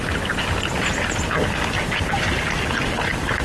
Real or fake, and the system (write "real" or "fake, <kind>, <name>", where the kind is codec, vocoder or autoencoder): real